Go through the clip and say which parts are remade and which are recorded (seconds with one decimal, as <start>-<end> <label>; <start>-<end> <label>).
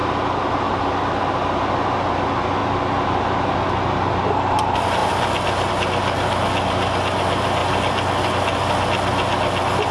0.0-9.9 recorded